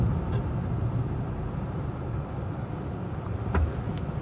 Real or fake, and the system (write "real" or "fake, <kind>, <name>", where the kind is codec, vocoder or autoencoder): real